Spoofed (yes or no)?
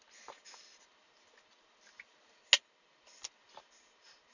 no